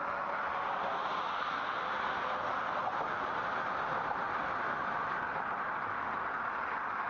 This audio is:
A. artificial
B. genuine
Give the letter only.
B